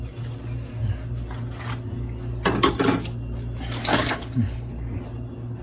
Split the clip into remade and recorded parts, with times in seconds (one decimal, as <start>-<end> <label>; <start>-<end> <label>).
0.0-3.9 recorded; 3.9-4.7 remade; 4.7-5.6 recorded